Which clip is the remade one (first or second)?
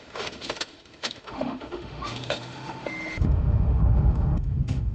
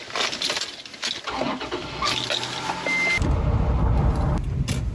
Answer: first